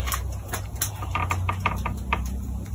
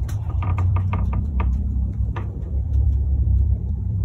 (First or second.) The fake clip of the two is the second